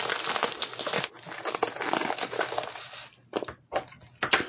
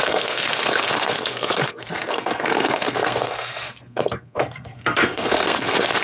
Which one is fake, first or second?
second